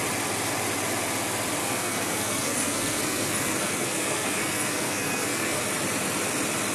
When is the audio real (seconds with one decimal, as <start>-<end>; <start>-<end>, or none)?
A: 0.0-1.6; 5.6-6.7